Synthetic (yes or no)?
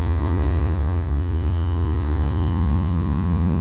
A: yes